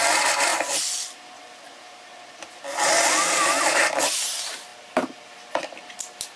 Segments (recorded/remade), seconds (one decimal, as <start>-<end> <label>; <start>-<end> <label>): 0.0-6.4 recorded